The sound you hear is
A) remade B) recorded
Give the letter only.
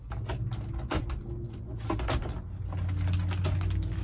B